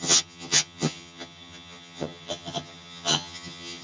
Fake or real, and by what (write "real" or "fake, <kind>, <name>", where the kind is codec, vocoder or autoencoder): fake, vocoder, HiFi-GAN